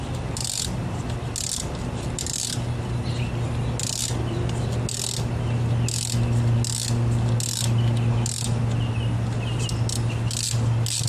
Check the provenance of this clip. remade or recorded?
recorded